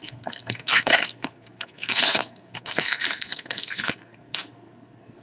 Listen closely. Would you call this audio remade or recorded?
remade